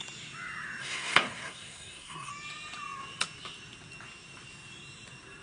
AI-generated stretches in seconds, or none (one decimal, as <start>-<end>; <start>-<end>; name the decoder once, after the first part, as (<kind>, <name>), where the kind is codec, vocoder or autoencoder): 0.8-2.3 (codec, SNAC)